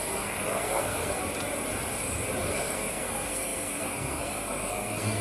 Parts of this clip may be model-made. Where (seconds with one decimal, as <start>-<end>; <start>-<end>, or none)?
0.0-1.2; 2.4-5.2